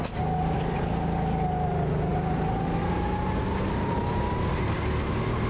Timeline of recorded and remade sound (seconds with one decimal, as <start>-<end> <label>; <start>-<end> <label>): 0.0-5.5 recorded